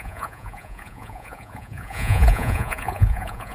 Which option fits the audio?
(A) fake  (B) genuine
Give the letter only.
A